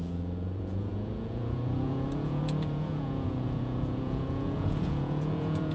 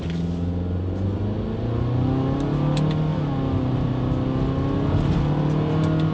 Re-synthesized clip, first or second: first